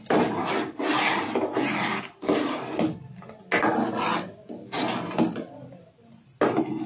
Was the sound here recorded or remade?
recorded